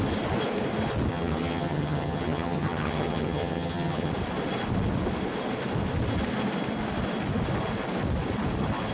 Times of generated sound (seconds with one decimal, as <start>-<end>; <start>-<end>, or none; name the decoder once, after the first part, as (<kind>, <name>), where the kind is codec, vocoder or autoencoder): 1.1-4.1 (vocoder, HiFi-GAN)